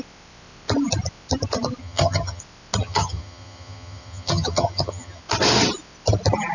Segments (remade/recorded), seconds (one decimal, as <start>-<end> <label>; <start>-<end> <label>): 0.0-1.8 recorded; 1.8-2.4 remade; 2.4-2.8 recorded; 2.8-5.2 remade; 5.2-6.5 recorded